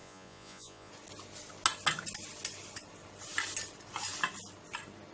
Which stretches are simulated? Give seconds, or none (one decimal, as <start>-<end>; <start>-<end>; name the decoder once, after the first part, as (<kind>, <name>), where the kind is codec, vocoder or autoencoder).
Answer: 0.0-0.9 (vocoder, Vocos)